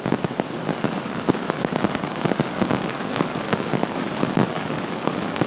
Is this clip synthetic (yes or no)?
yes